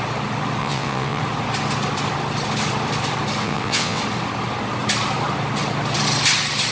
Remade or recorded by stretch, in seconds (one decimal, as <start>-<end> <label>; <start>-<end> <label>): 0.0-0.6 recorded; 0.6-1.2 remade; 1.2-3.4 recorded; 3.4-4.0 remade; 4.0-6.7 recorded